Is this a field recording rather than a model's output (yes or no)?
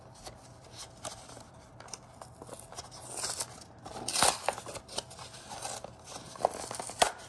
yes